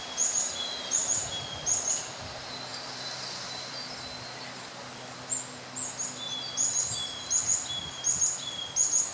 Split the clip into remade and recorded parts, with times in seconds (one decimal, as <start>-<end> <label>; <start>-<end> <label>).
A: 0.0-9.1 recorded